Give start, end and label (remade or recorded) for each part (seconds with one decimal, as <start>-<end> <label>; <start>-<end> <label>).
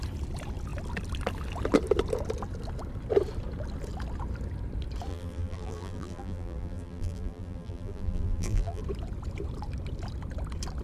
0.0-5.1 recorded; 5.1-8.8 remade; 8.8-10.8 recorded